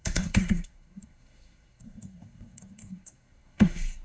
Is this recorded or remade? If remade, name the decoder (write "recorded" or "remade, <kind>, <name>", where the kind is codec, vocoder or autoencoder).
remade, codec, SNAC